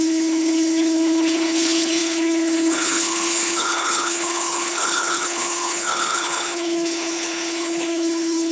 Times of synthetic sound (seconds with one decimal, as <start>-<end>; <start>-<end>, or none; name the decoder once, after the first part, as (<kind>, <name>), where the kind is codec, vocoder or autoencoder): 0.0-8.5 (codec, HILCodec)